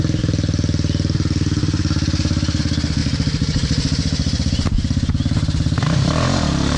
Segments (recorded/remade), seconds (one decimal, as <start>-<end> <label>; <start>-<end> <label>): 0.0-1.6 recorded; 1.6-2.6 remade; 2.6-3.0 recorded; 3.0-6.8 remade